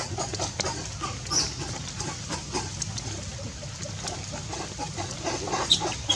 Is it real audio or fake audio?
fake